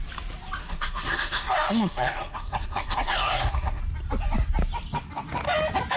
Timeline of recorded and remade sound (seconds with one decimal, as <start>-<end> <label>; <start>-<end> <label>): 0.0-0.6 recorded; 0.6-3.8 remade; 3.8-6.0 recorded